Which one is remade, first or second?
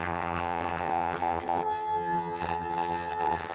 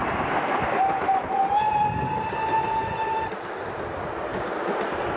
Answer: first